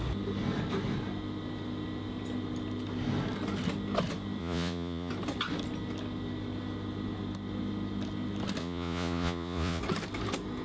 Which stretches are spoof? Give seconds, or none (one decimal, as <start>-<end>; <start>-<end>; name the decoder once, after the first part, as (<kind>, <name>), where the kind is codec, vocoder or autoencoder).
4.4-5.1 (vocoder, Vocos); 8.6-9.8